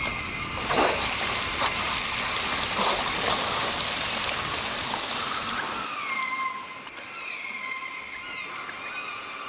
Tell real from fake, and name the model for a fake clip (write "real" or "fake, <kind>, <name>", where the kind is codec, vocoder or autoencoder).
real